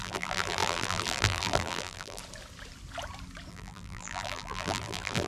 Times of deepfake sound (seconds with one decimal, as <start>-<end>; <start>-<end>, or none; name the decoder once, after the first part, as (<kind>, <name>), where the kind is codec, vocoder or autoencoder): 0.0-2.2 (vocoder, BigVGAN v2); 3.5-5.3